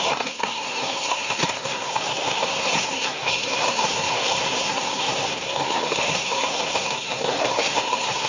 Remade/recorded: remade